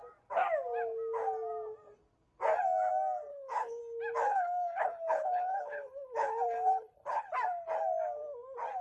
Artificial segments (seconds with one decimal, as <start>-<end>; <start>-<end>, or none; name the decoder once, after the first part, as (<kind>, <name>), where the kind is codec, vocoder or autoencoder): 3.3-3.8 (codec, HILCodec); 4.3-7.3